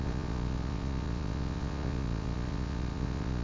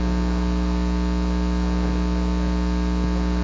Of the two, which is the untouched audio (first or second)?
second